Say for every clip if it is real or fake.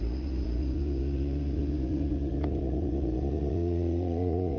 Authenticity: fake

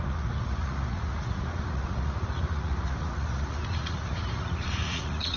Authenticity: fake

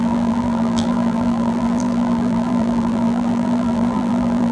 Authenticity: fake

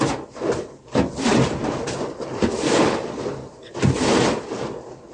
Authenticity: real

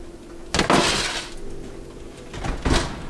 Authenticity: real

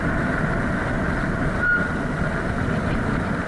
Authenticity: real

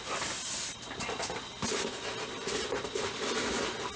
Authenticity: real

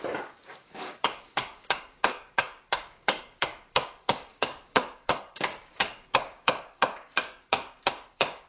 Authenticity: fake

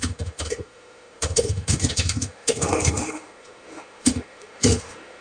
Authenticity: fake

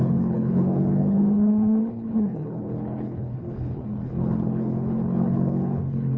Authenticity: fake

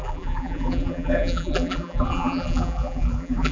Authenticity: fake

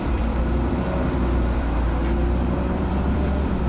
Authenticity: fake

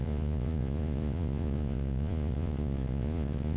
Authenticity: fake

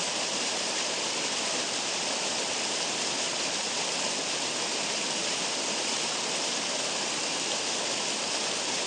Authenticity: fake